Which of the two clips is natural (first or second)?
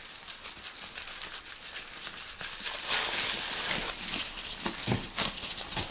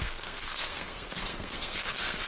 first